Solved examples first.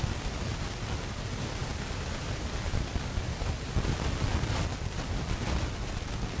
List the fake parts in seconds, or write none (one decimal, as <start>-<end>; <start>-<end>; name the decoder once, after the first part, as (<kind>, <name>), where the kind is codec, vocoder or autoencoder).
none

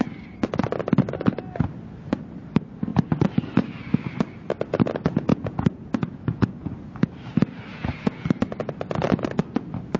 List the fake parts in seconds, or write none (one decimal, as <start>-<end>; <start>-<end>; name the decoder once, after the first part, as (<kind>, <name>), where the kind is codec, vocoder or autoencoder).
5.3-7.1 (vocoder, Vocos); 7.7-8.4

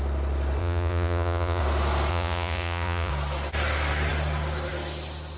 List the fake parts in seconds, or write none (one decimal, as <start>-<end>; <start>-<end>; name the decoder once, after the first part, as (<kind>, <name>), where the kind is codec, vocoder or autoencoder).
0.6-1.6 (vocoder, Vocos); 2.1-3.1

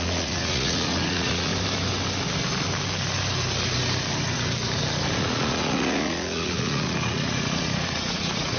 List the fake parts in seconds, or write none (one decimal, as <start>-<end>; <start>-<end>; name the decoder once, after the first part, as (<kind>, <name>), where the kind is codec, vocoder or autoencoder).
0.0-1.5 (vocoder, Vocos); 5.2-8.6